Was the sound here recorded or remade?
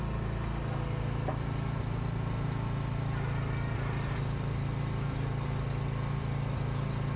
recorded